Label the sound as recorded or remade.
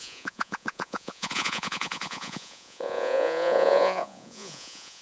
remade